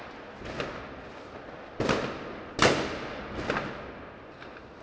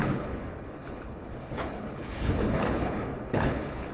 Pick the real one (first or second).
first